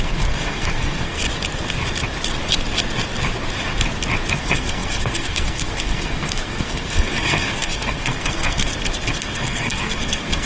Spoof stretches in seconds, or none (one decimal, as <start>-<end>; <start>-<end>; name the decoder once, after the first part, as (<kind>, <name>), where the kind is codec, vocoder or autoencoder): 0.0-1.2 (codec, SNAC); 4.3-8.7; 9.2-10.5